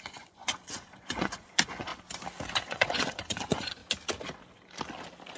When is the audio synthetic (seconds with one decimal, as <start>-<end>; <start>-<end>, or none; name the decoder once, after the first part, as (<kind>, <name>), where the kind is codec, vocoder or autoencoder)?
0.0-1.9 (vocoder, Vocos); 2.5-3.8